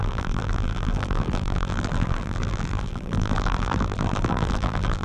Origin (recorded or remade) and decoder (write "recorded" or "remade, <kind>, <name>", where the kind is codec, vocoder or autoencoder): remade, vocoder, BigVGAN v2